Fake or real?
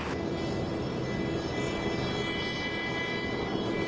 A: real